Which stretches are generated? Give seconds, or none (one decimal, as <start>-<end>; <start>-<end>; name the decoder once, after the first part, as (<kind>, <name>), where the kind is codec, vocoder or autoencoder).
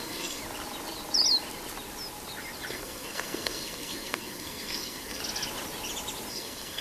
0.0-0.4 (codec, SNAC); 2.7-5.2; 6.3-6.8